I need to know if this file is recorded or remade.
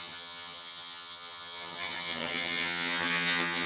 remade